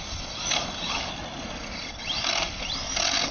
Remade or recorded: recorded